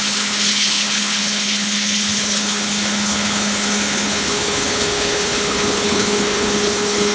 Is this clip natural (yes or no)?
no